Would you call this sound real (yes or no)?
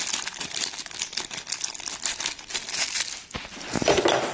yes